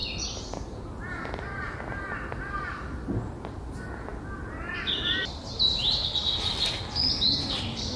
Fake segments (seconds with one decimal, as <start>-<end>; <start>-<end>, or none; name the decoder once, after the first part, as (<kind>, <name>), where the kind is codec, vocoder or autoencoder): 5.4-6.5 (vocoder, BigVGAN v2)